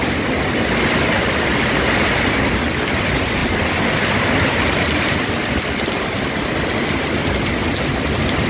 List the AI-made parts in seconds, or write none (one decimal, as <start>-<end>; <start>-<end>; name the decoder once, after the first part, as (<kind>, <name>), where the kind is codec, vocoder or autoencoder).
none